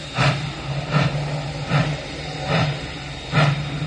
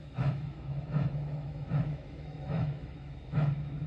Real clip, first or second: first